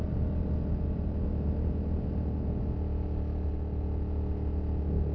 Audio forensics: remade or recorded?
recorded